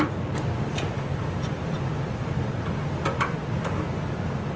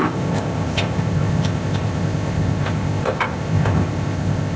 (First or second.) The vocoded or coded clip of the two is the second